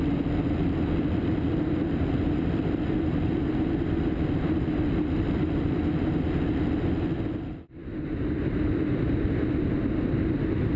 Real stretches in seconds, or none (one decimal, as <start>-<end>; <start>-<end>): 0.0-10.8